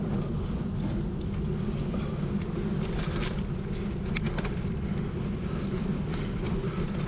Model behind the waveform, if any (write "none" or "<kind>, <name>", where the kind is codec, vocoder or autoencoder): none